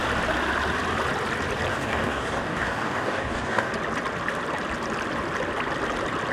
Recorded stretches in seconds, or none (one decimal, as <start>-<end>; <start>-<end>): 0.0-1.7; 3.7-6.3